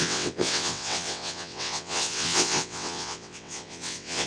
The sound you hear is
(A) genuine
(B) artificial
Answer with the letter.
B